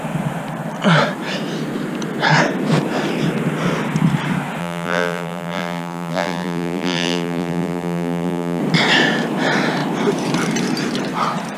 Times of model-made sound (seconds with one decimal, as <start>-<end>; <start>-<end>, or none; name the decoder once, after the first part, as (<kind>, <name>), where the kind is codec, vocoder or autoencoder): 4.6-8.6 (vocoder, BigVGAN v2)